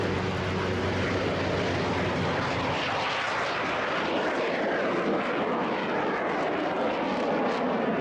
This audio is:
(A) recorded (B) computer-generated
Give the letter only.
A